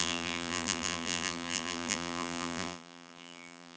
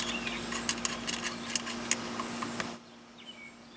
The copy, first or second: first